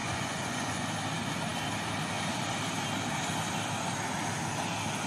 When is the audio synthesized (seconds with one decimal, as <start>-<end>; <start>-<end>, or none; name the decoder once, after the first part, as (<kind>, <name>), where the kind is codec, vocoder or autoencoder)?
0.0-0.9 (vocoder, Vocos)